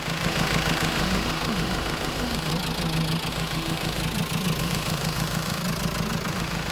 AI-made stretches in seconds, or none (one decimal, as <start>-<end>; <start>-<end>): 0.0-2.5; 3.3-4.0; 4.6-5.6; 6.3-6.7